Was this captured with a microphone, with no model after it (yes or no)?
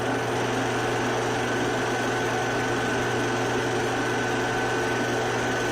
yes